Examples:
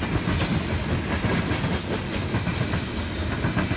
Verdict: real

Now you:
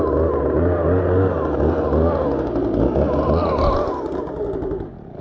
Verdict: real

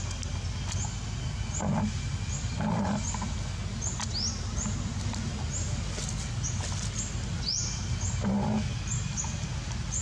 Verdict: real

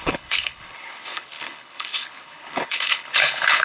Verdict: fake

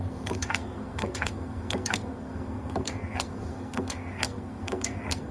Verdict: fake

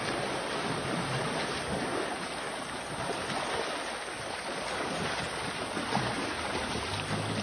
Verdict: real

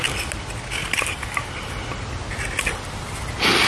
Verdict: real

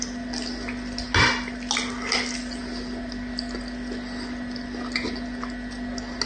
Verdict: real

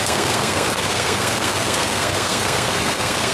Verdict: fake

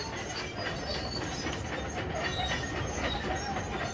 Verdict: real